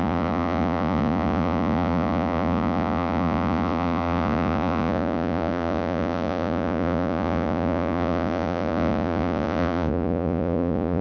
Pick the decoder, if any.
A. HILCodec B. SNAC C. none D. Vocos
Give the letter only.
D